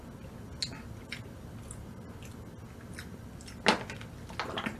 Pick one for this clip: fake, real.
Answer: real